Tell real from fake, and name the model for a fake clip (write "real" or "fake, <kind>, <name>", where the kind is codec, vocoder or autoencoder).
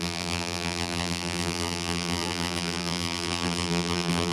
fake, vocoder, BigVGAN v2